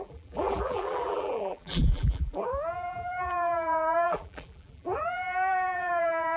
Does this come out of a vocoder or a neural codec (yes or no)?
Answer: yes